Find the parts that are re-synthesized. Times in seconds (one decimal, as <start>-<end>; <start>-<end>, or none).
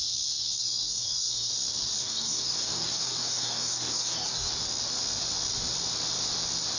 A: 0.6-1.5; 2.0-4.5